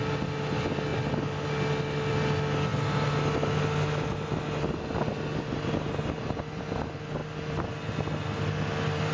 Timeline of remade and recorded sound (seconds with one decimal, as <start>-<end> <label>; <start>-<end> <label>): 0.0-9.1 recorded